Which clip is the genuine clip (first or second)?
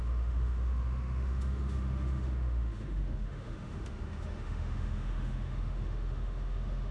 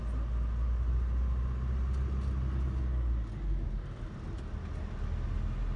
second